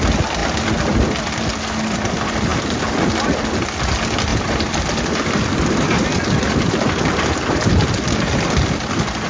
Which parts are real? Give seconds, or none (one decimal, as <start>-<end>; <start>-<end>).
0.0-4.3; 8.7-9.3